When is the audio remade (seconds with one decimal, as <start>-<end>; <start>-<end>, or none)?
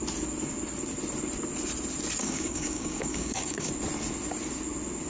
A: 2.2-3.7